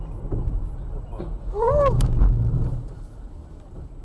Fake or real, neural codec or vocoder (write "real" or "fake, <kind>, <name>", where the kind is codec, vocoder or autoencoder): real